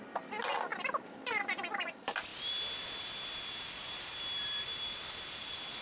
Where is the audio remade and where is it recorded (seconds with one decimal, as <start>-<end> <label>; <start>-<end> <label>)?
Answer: 0.0-5.8 recorded